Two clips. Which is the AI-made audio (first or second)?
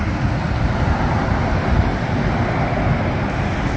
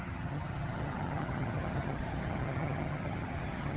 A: second